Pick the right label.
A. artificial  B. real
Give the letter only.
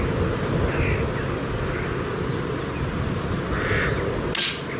B